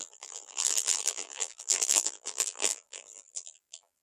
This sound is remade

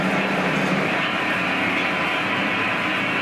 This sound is recorded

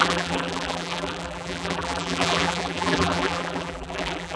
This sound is remade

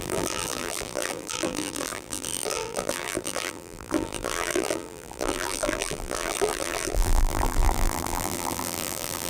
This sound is remade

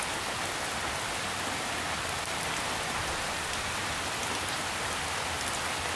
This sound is recorded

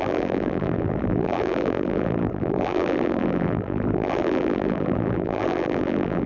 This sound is remade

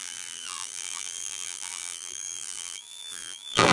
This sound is remade